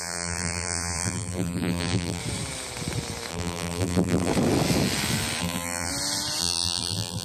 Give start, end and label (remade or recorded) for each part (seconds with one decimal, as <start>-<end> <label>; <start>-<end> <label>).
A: 0.0-2.2 remade; 2.2-3.3 recorded; 3.3-4.3 remade; 4.3-5.4 recorded; 5.4-5.9 remade; 5.9-6.4 recorded; 6.4-7.2 remade